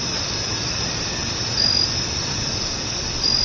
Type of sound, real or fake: real